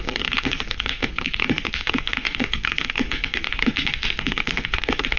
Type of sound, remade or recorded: remade